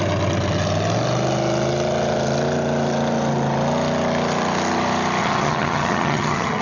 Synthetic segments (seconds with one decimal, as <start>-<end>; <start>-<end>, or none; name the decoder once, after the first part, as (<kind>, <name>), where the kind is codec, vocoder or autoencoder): 5.2-6.6 (vocoder, HiFi-GAN)